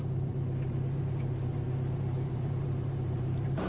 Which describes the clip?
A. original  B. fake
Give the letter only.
B